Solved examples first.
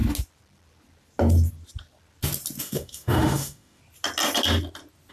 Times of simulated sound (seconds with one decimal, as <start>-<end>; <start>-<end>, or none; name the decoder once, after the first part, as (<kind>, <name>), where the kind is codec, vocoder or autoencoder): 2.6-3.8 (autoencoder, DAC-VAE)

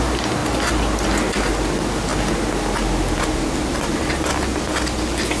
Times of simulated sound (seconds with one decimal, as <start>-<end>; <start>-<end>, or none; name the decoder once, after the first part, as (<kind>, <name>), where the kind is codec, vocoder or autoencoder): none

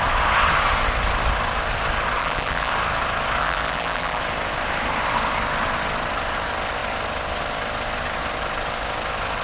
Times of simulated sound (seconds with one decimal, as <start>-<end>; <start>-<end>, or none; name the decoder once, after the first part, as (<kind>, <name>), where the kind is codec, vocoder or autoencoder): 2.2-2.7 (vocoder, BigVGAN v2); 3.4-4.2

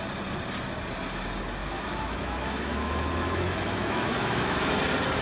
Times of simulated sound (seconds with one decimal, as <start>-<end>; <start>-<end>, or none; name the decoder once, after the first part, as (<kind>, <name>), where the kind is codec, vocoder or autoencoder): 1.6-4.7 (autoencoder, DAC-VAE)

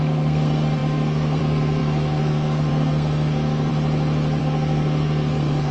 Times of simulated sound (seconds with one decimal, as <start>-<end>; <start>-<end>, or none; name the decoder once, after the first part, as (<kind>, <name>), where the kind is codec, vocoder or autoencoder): 0.0-3.7 (codec, SNAC); 4.4-5.7